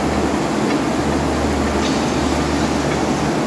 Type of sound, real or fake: real